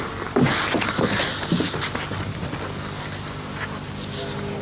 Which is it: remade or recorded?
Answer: recorded